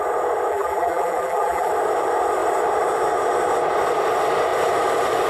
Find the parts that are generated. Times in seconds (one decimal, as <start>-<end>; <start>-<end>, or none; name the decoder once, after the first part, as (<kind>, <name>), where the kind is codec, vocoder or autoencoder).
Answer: 0.5-1.7 (vocoder, BigVGAN v2)